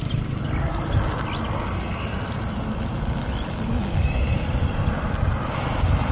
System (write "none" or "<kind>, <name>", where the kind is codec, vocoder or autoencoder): none